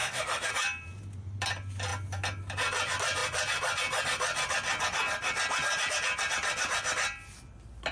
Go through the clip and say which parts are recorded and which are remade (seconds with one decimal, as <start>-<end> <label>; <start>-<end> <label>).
0.0-0.5 remade; 0.5-7.9 recorded

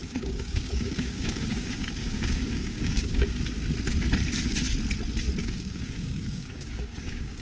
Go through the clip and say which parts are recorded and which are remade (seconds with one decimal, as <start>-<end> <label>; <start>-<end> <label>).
0.0-3.4 remade; 3.4-5.4 recorded; 5.4-7.4 remade

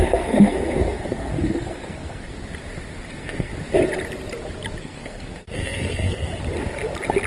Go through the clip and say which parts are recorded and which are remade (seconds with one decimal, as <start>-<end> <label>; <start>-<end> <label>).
0.0-2.3 remade; 2.3-3.1 recorded; 3.1-3.5 remade; 3.5-4.8 recorded; 4.8-6.3 remade; 6.3-7.3 recorded

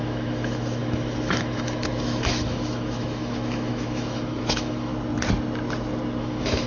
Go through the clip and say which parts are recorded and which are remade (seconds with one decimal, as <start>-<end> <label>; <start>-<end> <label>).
0.0-4.9 remade; 4.9-6.2 recorded; 6.2-6.7 remade

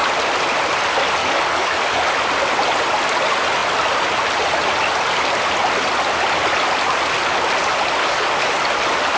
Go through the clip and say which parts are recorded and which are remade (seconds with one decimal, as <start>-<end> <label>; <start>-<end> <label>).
0.0-1.2 recorded; 1.2-2.0 remade; 2.0-8.0 recorded; 8.0-8.5 remade; 8.5-9.2 recorded